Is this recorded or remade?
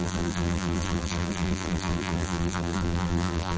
remade